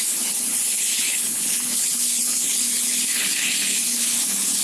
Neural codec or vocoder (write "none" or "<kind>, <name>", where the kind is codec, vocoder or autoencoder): codec, HILCodec